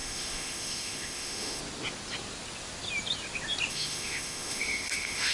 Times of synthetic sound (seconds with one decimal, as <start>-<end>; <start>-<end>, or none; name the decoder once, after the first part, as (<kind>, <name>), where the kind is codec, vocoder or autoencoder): 0.0-1.6 (autoencoder, DAC-VAE); 3.7-5.3